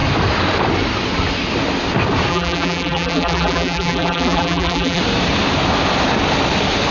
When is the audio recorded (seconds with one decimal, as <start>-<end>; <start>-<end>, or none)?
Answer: 0.0-2.3; 5.0-6.9

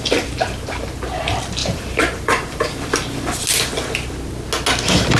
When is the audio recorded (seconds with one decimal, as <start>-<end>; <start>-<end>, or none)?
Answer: 0.0-1.6; 2.9-5.2

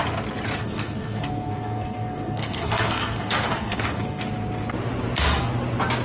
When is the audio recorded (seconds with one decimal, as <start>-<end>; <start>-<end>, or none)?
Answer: 0.0-0.6; 4.2-6.0

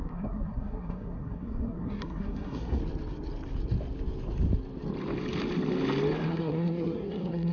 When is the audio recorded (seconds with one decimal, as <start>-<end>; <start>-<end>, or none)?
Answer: 2.8-6.3